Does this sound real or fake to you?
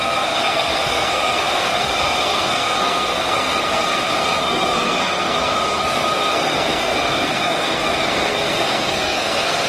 fake